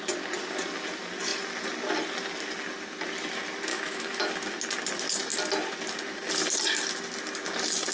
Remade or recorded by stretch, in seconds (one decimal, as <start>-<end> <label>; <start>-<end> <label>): 0.0-3.7 recorded; 3.7-4.3 remade; 4.3-7.9 recorded